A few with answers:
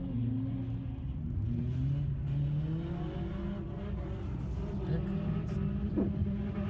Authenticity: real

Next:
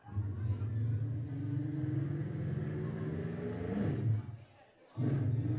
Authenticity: real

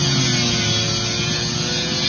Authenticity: real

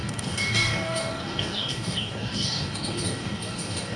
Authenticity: fake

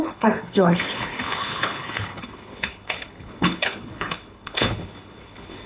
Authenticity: fake